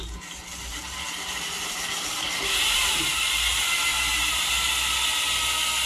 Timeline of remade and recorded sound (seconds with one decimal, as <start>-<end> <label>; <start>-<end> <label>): 0.0-3.5 remade; 3.5-3.9 recorded; 3.9-4.5 remade; 4.5-5.9 recorded

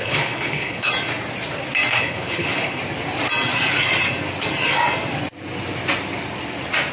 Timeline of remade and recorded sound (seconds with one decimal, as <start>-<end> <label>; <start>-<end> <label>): 0.0-0.9 remade; 0.9-1.9 recorded; 1.9-2.8 remade; 2.8-6.9 recorded

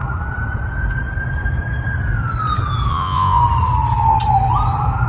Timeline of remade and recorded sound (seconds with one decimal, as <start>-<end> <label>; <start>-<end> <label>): 0.0-2.9 recorded; 2.9-3.4 remade; 3.4-5.1 recorded

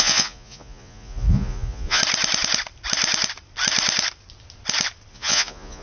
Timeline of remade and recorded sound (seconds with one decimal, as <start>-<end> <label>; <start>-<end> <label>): 0.0-2.0 remade; 2.0-5.1 recorded; 5.1-5.8 remade